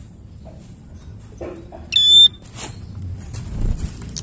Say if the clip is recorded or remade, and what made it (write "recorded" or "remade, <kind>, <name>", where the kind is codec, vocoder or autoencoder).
recorded